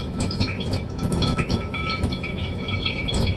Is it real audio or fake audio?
fake